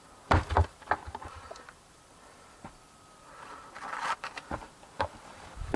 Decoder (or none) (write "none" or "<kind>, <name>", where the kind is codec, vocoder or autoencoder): vocoder, BigVGAN v2